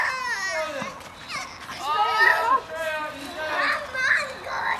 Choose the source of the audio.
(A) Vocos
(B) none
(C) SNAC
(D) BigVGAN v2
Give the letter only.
B